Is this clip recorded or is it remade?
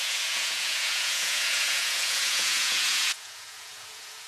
remade